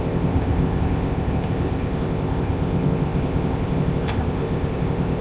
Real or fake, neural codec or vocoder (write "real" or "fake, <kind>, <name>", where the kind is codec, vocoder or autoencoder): fake, codec, ZipCodec